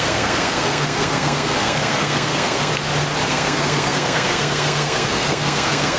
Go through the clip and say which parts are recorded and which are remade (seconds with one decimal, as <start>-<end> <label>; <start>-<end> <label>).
0.0-2.7 remade; 2.7-3.3 recorded; 3.3-6.0 remade